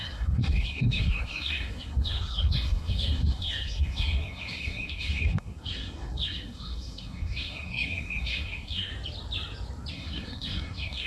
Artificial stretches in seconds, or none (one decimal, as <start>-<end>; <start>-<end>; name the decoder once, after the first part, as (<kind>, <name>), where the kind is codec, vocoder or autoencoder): 0.0-8.9 (codec, SNAC); 9.9-11.1